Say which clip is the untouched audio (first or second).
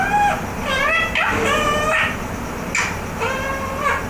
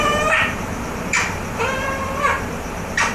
first